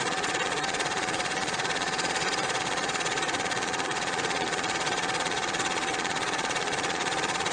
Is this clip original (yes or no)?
no